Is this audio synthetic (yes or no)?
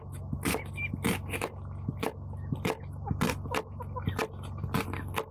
no